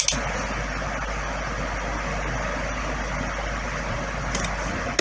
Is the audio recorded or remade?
recorded